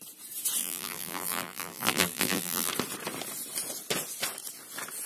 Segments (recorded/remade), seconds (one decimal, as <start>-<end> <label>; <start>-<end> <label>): 0.0-0.6 recorded; 0.6-2.7 remade; 2.7-5.1 recorded